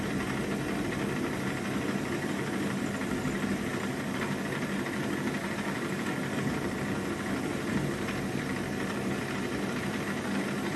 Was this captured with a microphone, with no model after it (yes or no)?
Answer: yes